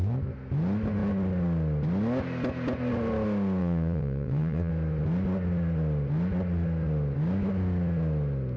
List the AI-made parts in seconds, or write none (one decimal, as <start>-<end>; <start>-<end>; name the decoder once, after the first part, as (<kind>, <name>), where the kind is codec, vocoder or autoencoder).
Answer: 3.6-4.7 (vocoder, WaveNeXt)